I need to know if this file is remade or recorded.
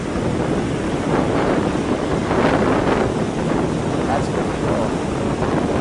recorded